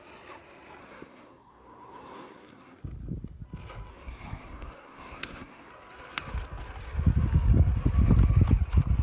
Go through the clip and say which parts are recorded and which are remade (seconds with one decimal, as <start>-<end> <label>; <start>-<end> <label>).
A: 0.0-0.8 recorded; 0.8-2.8 remade; 2.8-3.9 recorded; 3.9-5.7 remade; 5.7-9.0 recorded